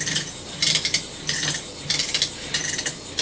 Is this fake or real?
fake